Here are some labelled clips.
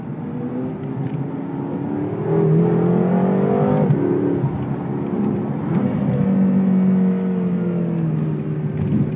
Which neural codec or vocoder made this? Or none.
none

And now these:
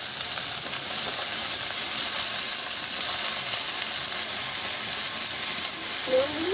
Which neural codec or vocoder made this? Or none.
none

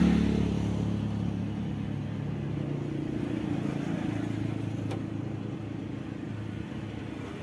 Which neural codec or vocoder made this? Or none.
none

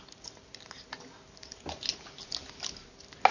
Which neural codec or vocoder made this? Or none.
none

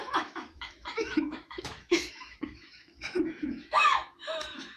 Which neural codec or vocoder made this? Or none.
autoencoder, DAC-VAE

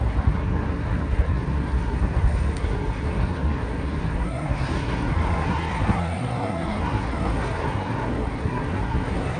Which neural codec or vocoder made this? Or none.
codec, SNAC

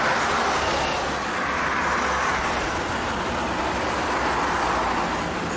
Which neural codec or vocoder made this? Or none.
none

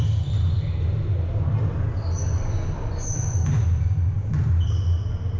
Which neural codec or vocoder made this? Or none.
none